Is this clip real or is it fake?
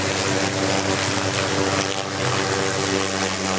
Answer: real